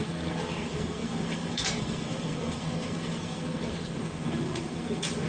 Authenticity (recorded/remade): remade